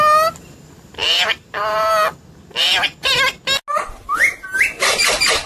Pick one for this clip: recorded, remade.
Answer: recorded